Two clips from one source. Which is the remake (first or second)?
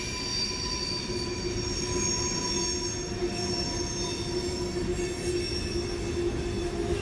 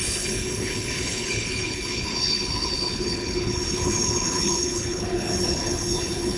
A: second